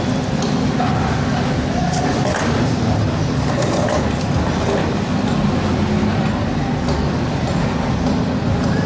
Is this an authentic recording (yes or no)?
yes